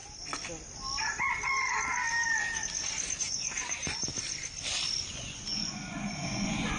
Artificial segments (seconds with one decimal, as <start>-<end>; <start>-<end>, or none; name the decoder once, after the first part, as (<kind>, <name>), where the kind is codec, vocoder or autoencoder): 3.2-4.1 (vocoder, Vocos); 5.1-6.8